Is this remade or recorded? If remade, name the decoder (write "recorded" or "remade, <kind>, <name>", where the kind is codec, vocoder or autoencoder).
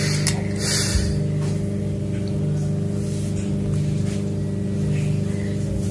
recorded